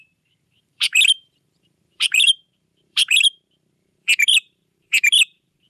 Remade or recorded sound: remade